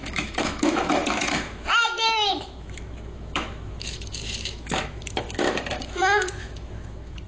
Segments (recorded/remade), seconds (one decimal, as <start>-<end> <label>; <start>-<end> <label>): 0.0-7.3 remade